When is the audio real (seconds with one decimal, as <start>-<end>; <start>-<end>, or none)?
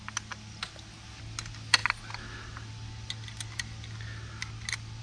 0.0-5.0